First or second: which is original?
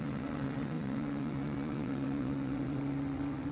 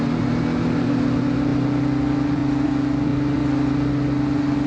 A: second